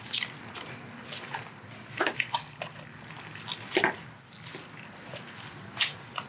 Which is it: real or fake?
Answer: real